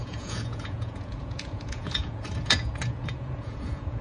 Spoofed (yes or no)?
yes